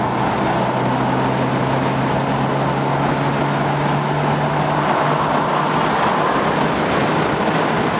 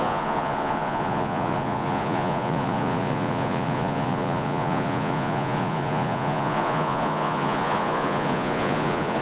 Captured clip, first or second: first